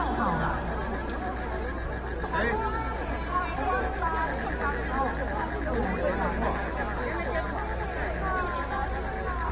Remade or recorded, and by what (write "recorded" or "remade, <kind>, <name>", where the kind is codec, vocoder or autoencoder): recorded